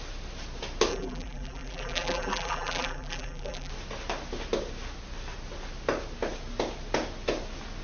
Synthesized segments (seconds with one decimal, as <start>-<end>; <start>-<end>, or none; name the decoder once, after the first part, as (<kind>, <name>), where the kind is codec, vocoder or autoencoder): 0.9-3.7 (vocoder, BigVGAN v2)